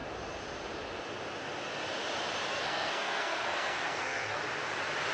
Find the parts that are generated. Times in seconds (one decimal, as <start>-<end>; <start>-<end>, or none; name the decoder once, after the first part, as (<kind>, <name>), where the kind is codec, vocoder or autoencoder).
2.5-4.4 (codec, SNAC)